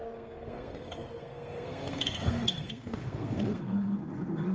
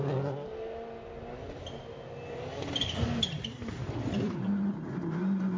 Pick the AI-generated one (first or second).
first